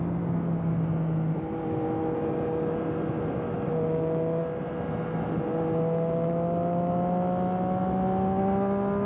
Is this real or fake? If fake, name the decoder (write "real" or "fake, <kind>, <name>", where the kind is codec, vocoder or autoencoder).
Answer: real